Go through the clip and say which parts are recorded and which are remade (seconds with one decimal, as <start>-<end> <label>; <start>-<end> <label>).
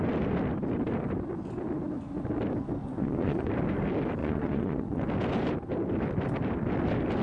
0.0-2.8 recorded; 2.8-3.5 remade; 3.5-4.2 recorded; 4.2-5.0 remade; 5.0-7.2 recorded